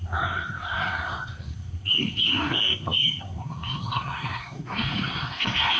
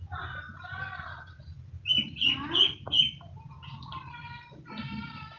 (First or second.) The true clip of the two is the second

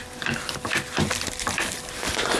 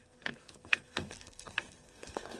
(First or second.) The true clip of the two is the first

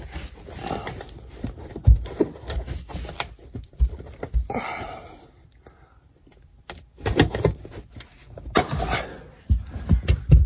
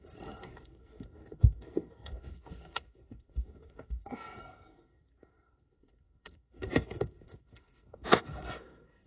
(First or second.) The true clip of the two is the first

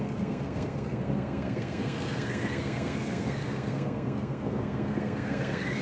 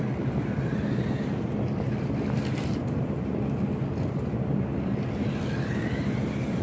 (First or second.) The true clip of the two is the second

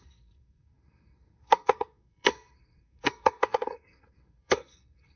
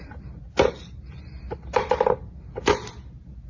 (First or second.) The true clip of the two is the second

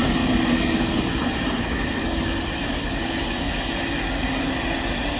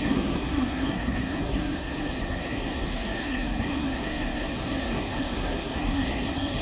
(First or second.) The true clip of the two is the first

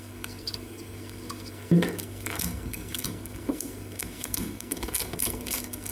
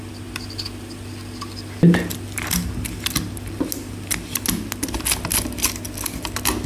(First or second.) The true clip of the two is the second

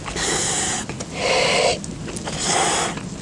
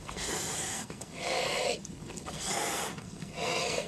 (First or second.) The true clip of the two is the first